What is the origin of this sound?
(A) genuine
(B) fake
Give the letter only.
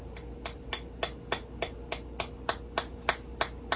A